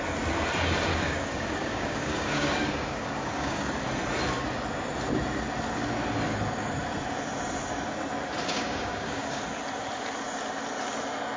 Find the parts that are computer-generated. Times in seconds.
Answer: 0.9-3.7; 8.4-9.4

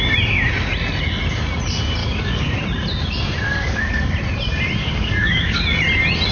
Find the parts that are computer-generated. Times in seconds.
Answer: 2.0-2.5; 3.5-4.1; 4.8-5.6